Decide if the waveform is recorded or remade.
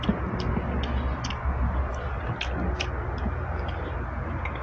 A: recorded